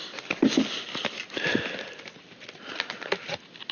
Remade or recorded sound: recorded